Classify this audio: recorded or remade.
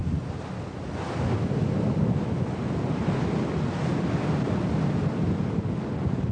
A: recorded